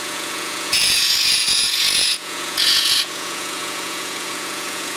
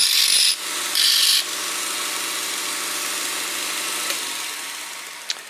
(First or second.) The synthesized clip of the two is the first